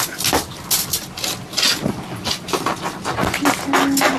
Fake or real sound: real